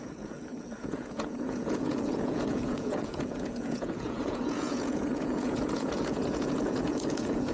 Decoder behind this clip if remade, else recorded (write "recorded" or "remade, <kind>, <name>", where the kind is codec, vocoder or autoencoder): remade, vocoder, Vocos